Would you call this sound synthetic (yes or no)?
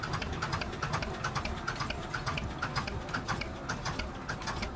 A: no